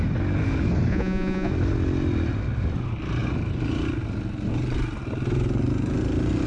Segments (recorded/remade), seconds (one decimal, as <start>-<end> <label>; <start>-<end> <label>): 0.0-0.9 recorded; 0.9-1.5 remade; 1.5-6.5 recorded